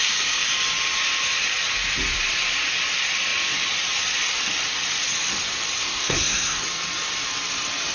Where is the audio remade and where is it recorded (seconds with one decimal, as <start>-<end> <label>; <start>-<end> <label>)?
0.0-5.8 recorded; 5.8-6.6 remade; 6.6-7.9 recorded